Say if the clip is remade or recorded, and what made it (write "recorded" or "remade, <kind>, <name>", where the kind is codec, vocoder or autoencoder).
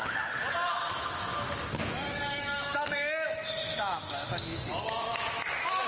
remade, autoencoder, DAC-VAE